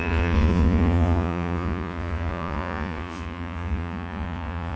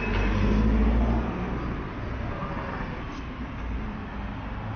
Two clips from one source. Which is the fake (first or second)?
first